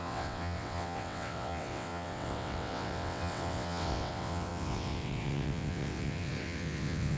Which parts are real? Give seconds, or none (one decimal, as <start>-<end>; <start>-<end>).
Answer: none